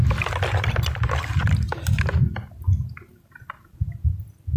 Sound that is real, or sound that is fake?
real